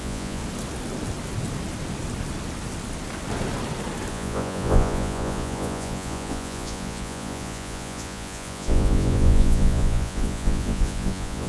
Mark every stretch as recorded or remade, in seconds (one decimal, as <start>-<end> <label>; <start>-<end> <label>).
0.0-0.4 remade; 0.4-4.1 recorded; 4.1-11.5 remade